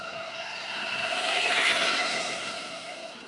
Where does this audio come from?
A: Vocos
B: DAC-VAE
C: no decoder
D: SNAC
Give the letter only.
D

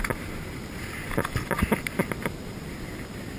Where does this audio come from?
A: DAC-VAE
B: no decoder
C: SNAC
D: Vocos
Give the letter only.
B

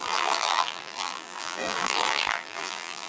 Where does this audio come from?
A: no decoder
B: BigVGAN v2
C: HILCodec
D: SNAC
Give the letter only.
B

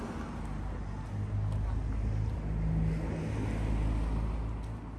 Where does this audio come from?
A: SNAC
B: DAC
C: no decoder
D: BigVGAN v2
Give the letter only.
C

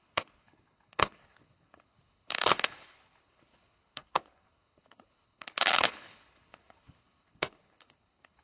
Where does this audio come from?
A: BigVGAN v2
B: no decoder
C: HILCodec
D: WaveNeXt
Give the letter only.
C